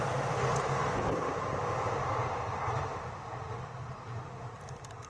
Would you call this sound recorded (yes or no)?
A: yes